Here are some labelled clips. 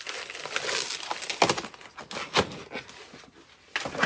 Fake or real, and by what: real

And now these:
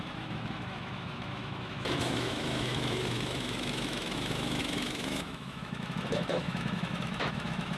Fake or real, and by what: fake, autoencoder, DAC-VAE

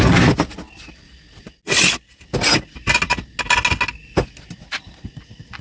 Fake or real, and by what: real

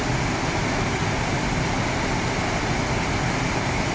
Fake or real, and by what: real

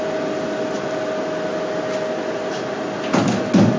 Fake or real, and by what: real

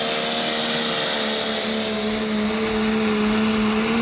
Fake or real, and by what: real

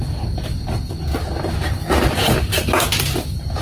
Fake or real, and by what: real